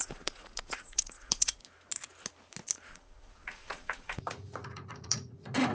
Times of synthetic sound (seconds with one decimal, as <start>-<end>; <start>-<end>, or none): 0.0-1.6; 2.9-5.7